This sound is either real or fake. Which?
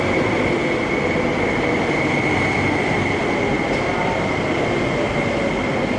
real